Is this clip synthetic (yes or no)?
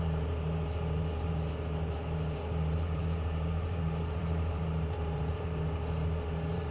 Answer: yes